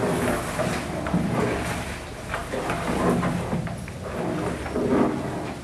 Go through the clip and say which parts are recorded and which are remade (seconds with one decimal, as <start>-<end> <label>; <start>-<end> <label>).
0.0-5.6 recorded